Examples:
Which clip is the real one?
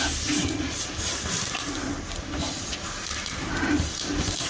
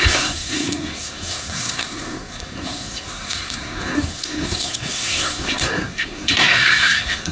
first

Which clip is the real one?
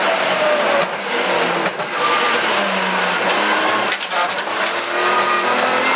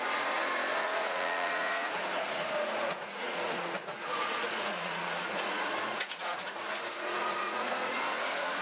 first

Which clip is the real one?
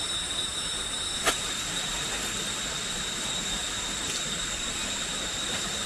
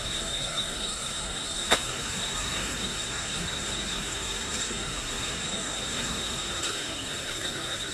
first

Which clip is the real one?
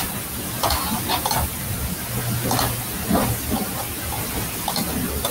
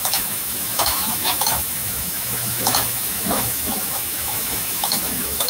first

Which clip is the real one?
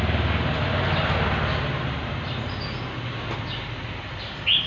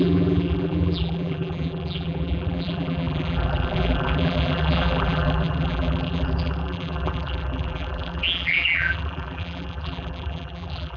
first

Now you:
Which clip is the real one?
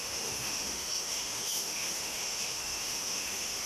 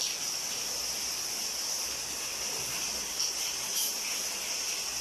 second